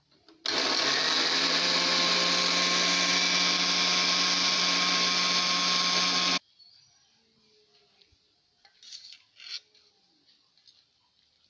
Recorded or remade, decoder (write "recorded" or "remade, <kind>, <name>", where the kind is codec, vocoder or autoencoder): recorded